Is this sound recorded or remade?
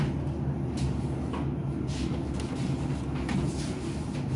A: recorded